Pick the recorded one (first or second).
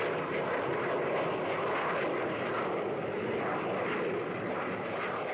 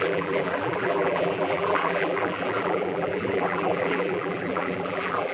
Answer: first